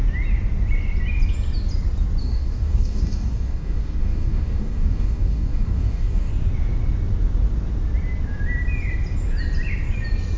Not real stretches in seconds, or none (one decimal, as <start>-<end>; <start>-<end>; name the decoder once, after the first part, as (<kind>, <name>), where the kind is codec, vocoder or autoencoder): 2.2-6.3 (codec, DAC)